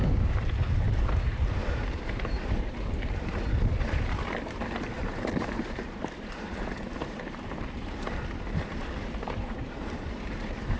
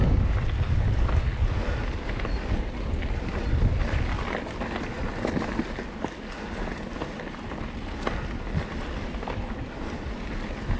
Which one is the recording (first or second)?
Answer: second